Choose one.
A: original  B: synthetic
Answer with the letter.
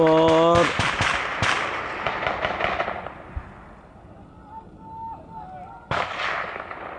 A